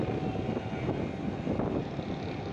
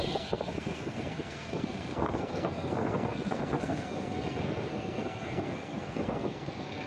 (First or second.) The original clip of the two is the first